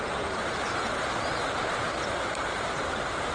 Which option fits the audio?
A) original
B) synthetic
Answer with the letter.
B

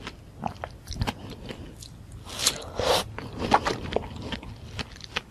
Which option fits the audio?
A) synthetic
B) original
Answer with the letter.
B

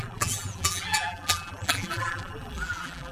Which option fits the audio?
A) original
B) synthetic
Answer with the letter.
B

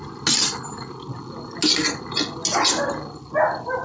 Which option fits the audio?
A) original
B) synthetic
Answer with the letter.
A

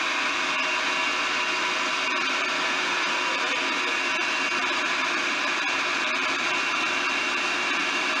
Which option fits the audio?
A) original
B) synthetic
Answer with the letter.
B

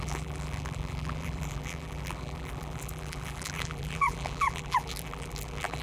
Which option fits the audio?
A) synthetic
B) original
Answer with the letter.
A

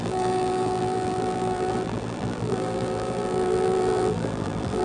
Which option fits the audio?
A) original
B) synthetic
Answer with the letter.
B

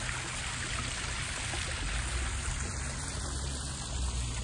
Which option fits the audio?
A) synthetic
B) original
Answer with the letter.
B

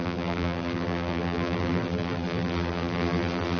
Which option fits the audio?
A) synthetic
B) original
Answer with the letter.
A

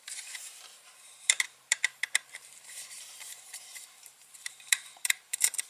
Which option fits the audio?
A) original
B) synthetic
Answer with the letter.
B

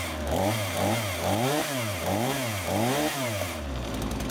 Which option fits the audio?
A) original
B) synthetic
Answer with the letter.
B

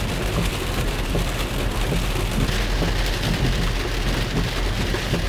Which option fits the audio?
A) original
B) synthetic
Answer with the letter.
A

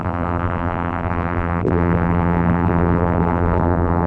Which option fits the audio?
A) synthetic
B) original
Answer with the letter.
A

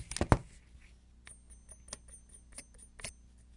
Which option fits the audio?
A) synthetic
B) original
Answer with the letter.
B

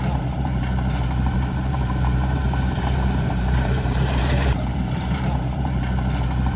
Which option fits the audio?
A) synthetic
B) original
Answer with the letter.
A